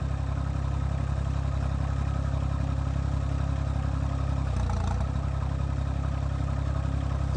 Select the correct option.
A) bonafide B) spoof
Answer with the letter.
A